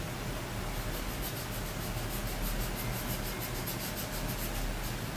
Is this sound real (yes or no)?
yes